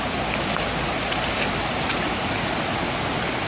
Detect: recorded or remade recorded